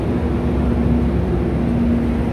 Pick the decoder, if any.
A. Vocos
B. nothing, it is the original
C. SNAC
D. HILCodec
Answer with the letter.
B